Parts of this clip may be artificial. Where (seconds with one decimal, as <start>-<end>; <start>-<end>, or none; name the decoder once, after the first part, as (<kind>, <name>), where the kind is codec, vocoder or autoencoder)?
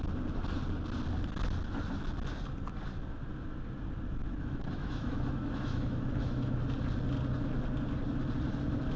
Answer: 4.2-6.6 (autoencoder, DAC-VAE)